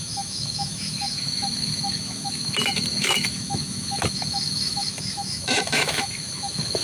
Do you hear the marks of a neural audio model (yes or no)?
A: yes